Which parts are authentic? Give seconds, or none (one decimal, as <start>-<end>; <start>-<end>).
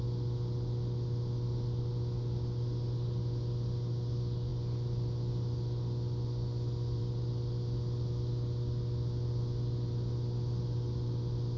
0.0-11.6